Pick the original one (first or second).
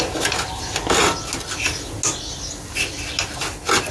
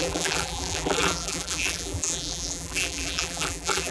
first